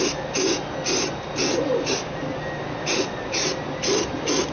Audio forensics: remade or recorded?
recorded